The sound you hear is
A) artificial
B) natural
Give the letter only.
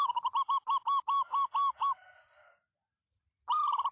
B